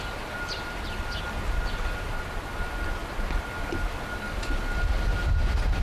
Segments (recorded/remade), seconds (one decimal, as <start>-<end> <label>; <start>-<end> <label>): 0.0-3.0 recorded; 3.0-3.5 remade; 3.5-5.8 recorded